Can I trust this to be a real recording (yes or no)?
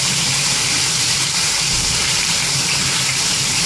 no